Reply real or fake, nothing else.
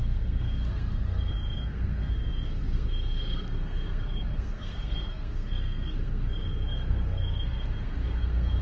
fake